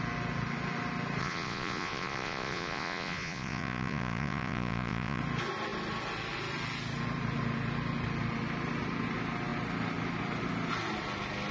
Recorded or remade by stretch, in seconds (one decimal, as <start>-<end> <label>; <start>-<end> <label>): 0.0-1.2 recorded; 1.2-5.2 remade; 5.2-11.5 recorded